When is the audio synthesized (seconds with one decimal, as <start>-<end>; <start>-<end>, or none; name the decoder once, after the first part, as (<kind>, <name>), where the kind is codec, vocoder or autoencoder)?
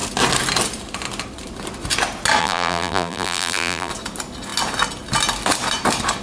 2.4-3.9 (vocoder, BigVGAN v2)